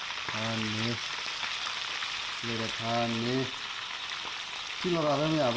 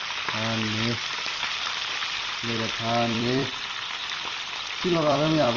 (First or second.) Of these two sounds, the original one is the first